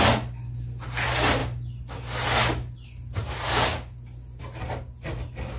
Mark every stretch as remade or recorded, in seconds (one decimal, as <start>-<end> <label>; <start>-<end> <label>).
0.0-5.6 recorded